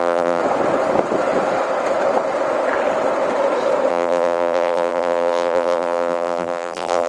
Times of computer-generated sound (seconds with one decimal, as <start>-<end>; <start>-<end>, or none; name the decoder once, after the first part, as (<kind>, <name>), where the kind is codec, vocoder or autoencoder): 0.0-0.4 (vocoder, BigVGAN v2); 3.9-7.1